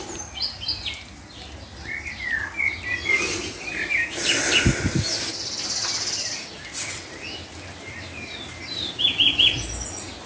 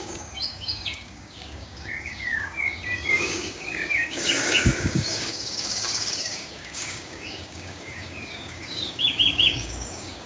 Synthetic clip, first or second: second